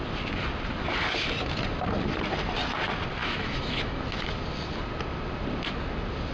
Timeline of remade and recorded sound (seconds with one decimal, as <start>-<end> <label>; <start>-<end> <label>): 0.0-3.2 recorded; 3.2-4.0 remade; 4.0-6.3 recorded